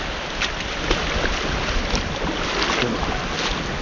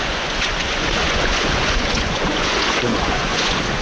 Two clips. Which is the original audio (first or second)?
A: first